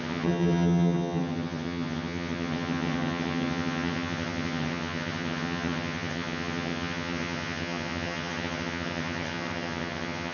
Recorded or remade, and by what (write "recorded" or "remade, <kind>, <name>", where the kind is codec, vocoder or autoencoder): remade, vocoder, HiFi-GAN